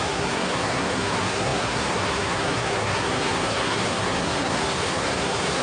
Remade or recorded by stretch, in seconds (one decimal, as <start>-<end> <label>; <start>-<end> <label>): 0.0-5.6 remade